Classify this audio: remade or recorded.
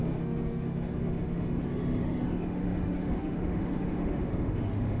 remade